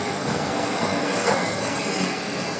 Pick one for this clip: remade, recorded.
remade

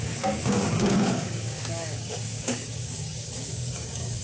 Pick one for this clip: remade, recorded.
remade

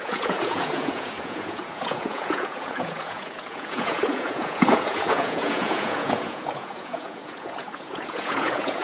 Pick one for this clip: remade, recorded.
remade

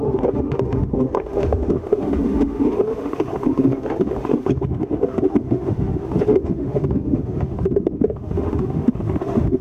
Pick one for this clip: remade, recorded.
remade